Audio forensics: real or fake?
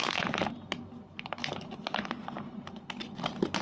real